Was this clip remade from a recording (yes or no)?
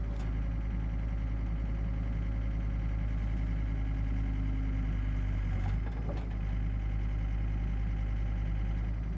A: no